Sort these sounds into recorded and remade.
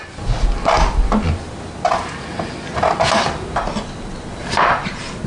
recorded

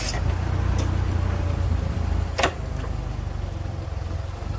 recorded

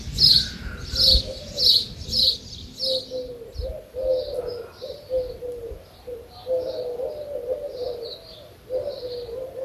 recorded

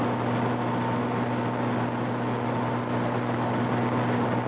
recorded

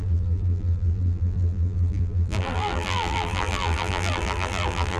remade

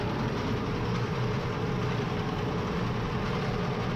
recorded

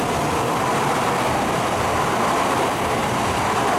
recorded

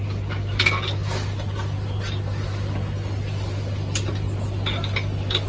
recorded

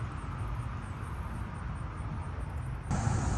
recorded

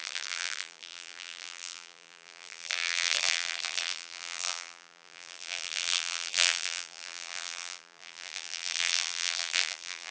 remade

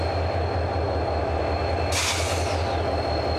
recorded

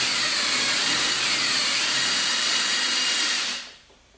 remade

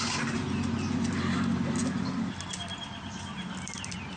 recorded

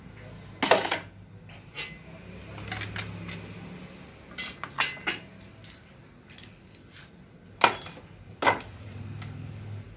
recorded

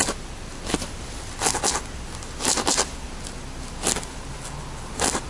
recorded